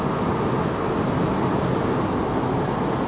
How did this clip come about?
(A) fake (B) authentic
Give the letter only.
B